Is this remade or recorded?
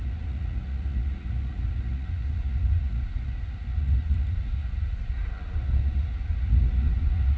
remade